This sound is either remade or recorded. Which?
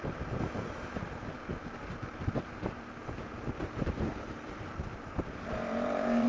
remade